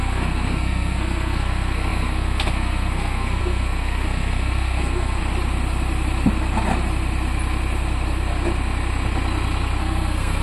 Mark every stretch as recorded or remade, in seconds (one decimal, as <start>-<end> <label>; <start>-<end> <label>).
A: 0.0-5.2 remade; 5.2-9.8 recorded; 9.8-10.4 remade